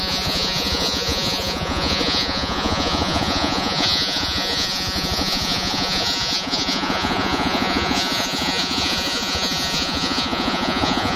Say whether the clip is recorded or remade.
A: remade